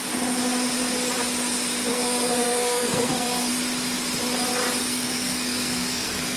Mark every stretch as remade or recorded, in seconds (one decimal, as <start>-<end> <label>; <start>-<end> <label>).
0.0-1.9 recorded; 1.9-3.5 remade; 3.5-4.8 recorded; 4.8-6.4 remade